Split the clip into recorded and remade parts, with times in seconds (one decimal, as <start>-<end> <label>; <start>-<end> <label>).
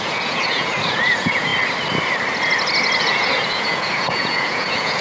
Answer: 0.0-1.5 remade; 1.5-3.0 recorded; 3.0-5.0 remade